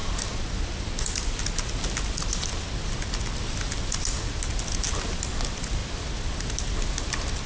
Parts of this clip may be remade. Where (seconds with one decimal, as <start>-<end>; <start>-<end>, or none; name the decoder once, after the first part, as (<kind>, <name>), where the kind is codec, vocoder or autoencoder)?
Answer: none